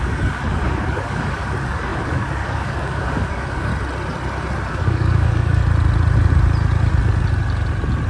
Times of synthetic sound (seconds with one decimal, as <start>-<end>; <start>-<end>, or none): 0.0-3.7; 4.7-5.6